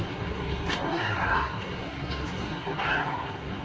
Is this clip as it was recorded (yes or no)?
no